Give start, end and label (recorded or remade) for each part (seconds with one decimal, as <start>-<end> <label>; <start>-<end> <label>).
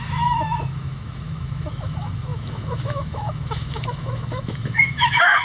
0.0-5.4 remade